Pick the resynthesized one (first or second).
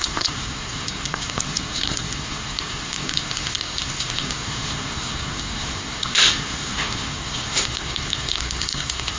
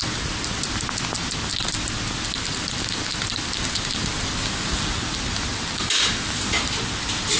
first